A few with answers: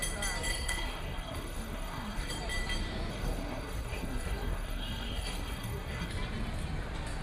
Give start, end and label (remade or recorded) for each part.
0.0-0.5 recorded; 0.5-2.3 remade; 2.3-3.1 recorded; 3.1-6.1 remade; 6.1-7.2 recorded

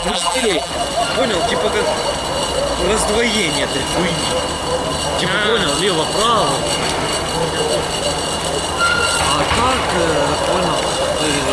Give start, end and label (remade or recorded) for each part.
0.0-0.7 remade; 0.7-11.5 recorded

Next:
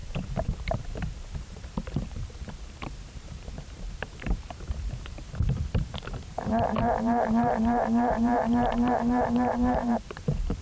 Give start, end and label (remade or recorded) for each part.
0.0-10.6 remade

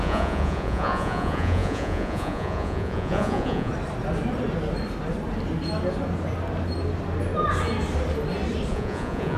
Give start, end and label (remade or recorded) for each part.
0.0-3.7 remade; 3.7-8.7 recorded; 8.7-9.4 remade

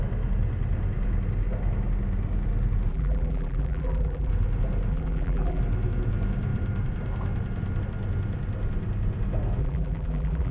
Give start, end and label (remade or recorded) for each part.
0.0-2.9 recorded; 2.9-4.3 remade; 4.3-4.9 recorded; 4.9-5.6 remade; 5.6-9.6 recorded; 9.6-10.5 remade

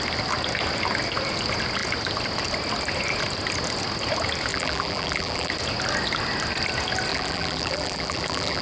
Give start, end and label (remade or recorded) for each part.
0.0-4.5 recorded; 4.5-5.5 remade; 5.5-7.1 recorded; 7.1-8.6 remade

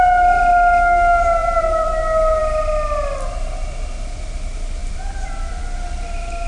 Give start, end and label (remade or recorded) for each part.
0.0-1.4 recorded; 1.4-2.0 remade; 2.0-4.8 recorded; 4.8-5.6 remade; 5.6-6.5 recorded